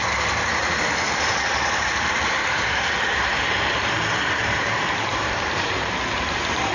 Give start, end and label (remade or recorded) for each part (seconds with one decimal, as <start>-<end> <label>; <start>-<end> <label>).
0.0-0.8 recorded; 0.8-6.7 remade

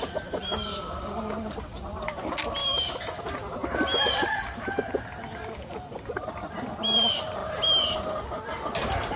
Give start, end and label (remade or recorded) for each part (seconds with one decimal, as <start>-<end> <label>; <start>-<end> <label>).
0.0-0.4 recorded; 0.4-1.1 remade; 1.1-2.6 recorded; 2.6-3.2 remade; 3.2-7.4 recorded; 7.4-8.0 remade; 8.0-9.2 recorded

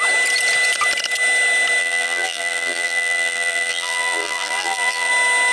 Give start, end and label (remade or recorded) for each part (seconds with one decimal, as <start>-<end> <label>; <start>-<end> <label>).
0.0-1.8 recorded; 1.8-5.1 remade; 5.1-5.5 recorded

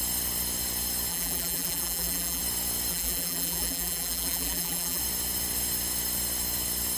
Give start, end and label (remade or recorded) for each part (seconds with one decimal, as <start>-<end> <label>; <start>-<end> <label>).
0.0-1.1 recorded; 1.1-2.4 remade; 2.4-2.9 recorded; 2.9-5.0 remade; 5.0-7.0 recorded

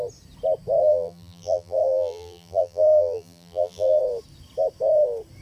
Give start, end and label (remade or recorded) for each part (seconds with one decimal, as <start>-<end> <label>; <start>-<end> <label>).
0.0-0.8 recorded; 0.8-4.0 remade; 4.0-5.4 recorded

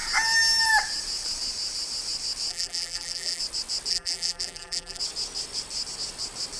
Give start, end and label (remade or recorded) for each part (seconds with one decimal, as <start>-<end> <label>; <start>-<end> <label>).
0.0-2.5 recorded; 2.5-3.4 remade; 3.4-3.9 recorded; 3.9-5.0 remade; 5.0-6.6 recorded

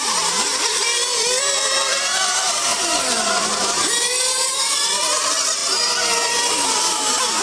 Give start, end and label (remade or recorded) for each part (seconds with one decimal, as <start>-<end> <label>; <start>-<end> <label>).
0.0-7.4 remade